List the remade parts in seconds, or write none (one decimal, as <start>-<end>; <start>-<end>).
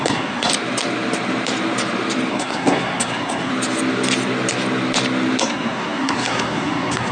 0.0-0.5; 2.3-3.5; 5.4-7.1